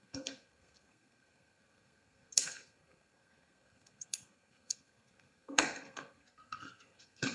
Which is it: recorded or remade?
remade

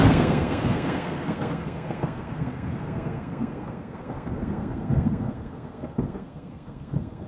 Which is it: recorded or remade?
remade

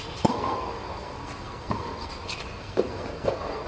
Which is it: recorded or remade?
remade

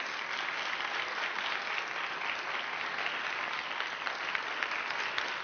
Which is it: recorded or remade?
recorded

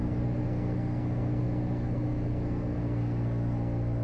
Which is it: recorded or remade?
remade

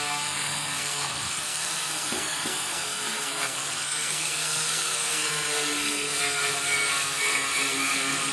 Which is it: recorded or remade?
remade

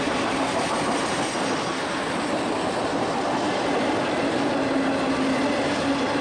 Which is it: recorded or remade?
recorded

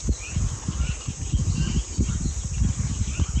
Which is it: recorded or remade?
recorded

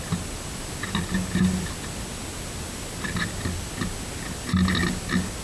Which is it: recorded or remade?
recorded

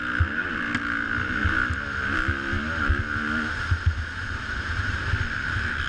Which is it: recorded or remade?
recorded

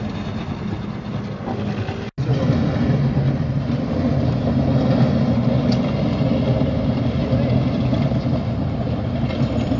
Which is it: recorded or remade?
recorded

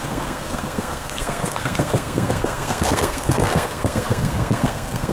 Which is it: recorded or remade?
remade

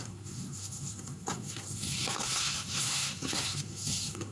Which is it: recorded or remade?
remade